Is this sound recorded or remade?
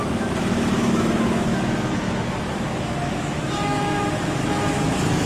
remade